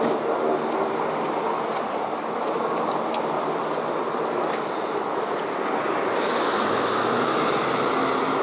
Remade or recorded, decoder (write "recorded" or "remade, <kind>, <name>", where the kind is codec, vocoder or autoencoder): recorded